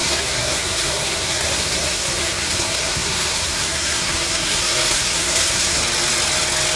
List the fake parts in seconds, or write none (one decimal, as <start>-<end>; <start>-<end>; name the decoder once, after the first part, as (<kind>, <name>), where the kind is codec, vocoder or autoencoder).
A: 0.0-5.8 (codec, SNAC)